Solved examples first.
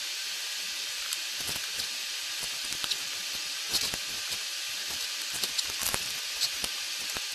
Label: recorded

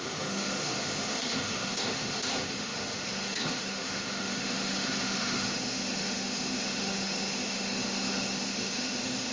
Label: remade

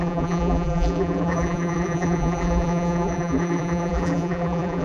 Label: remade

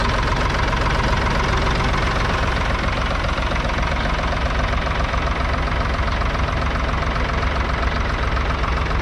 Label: recorded